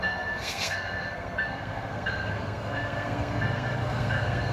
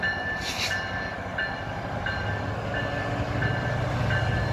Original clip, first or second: second